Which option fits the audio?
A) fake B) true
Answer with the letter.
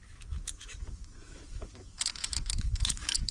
A